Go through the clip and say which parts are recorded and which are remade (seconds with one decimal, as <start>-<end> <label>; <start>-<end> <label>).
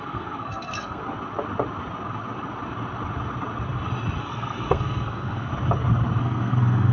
0.0-1.0 remade; 1.0-4.2 recorded; 4.2-5.5 remade; 5.5-6.2 recorded; 6.2-6.9 remade